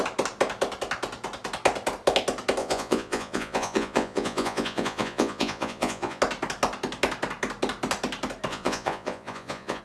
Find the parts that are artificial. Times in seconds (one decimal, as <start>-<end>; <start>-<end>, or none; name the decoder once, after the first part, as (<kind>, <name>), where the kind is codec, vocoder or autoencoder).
2.6-6.2 (vocoder, Vocos); 8.5-9.8